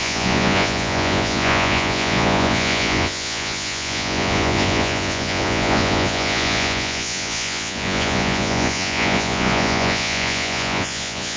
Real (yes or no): no